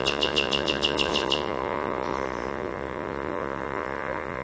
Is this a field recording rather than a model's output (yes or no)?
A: no